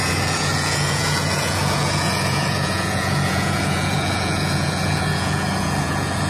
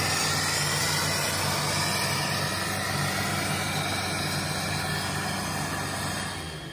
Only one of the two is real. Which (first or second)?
second